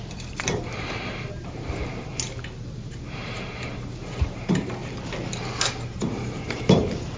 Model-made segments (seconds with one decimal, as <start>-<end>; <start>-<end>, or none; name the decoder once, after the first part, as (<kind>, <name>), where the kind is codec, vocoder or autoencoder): 0.0-2.1 (vocoder, BigVGAN v2); 2.9-4.8; 5.8-7.2